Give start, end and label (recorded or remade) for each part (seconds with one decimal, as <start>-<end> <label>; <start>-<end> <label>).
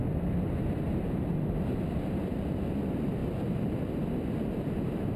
0.0-5.2 recorded